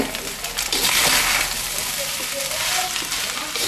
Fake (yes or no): yes